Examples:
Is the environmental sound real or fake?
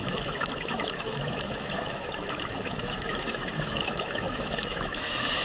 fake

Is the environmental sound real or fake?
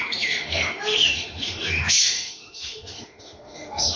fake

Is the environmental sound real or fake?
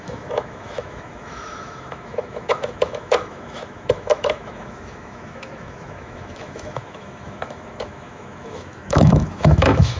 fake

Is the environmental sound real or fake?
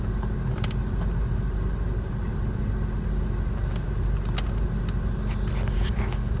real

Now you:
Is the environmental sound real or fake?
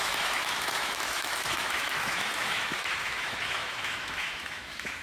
fake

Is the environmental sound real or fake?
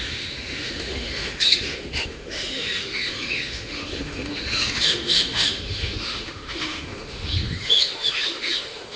fake